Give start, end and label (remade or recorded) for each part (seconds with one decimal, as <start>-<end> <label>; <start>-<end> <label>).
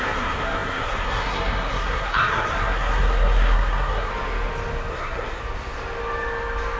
0.0-4.1 remade; 4.1-4.9 recorded; 4.9-5.4 remade; 5.4-6.8 recorded